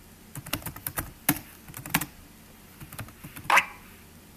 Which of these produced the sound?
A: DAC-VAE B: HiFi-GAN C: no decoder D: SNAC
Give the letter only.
C